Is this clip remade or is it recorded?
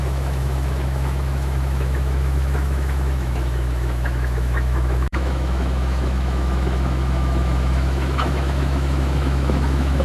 remade